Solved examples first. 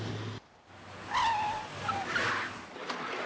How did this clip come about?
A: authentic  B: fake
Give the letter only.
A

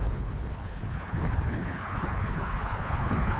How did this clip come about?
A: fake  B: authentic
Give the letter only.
A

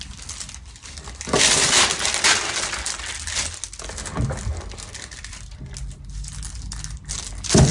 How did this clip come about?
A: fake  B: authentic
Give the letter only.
B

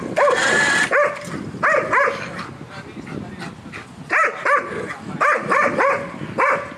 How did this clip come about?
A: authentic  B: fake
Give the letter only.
A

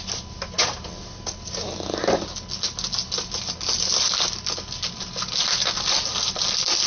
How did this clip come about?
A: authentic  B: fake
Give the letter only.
A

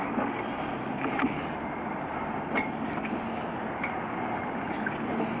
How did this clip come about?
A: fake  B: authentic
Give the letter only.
B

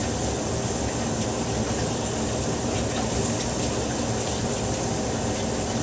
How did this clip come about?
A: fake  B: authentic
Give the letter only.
B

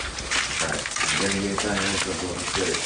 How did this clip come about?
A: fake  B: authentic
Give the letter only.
B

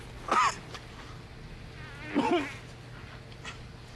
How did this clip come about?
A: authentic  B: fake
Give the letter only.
A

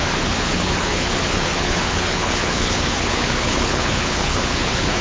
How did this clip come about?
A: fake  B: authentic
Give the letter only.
A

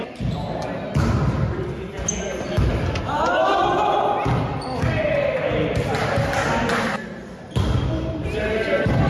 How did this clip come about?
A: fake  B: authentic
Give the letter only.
B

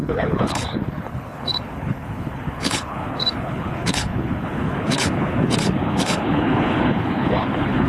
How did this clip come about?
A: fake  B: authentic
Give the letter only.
A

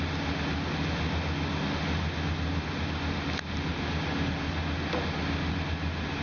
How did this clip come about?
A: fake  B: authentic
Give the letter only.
B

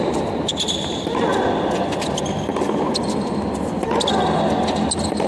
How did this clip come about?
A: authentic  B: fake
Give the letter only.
A